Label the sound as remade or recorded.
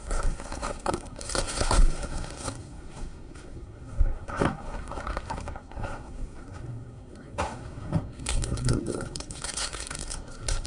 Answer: remade